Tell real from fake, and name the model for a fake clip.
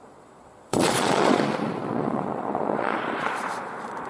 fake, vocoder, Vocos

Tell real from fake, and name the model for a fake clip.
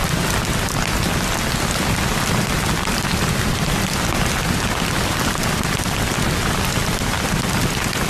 real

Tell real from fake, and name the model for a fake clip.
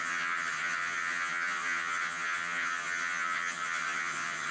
fake, vocoder, HiFi-GAN